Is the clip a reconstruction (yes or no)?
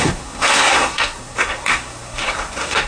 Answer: yes